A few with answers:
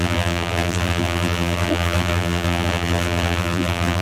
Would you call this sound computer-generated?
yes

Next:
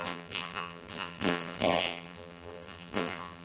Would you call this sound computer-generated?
yes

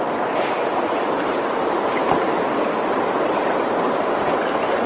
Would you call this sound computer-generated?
no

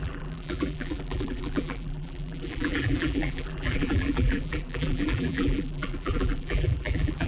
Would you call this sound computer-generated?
yes